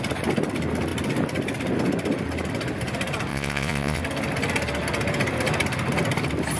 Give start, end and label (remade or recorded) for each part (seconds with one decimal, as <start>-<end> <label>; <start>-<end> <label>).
0.0-3.3 recorded; 3.3-4.0 remade; 4.0-6.6 recorded